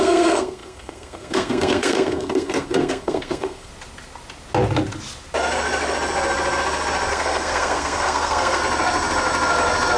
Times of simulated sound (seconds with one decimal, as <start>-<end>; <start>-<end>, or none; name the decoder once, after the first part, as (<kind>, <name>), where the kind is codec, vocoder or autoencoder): 0.0-3.7 (codec, SNAC); 7.1-8.6